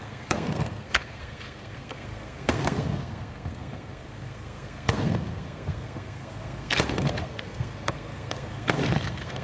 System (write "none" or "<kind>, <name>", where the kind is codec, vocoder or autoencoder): codec, SNAC